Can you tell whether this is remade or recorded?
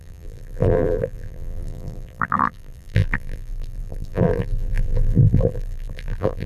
remade